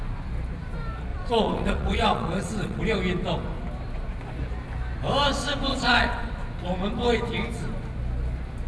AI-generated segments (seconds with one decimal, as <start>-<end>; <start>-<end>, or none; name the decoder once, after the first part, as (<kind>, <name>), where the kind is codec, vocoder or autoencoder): 1.1-2.8 (vocoder, WaveNeXt); 5.7-6.3